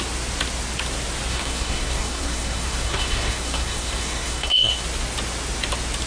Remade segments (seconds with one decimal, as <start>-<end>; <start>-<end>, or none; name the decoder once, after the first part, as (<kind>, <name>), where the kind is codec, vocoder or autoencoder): 1.3-4.8 (codec, SNAC)